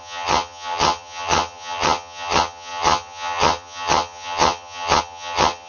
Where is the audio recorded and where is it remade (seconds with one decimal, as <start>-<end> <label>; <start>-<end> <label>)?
0.0-5.7 remade

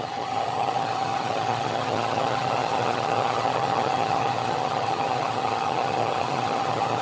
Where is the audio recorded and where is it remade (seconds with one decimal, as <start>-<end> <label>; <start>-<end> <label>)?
0.0-7.0 remade